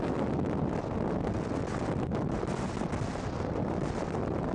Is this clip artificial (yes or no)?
no